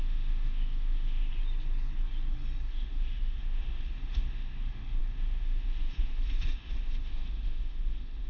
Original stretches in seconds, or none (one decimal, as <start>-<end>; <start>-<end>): 1.3-2.7